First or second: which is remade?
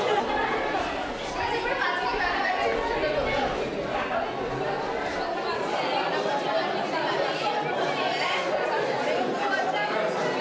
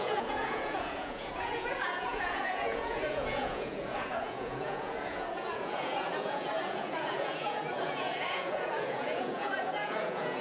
second